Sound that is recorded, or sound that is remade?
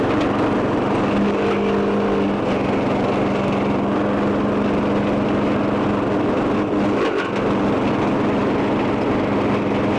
recorded